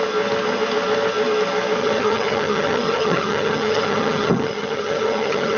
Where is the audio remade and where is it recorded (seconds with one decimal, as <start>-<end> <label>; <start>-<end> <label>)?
0.0-1.8 recorded; 1.8-5.6 remade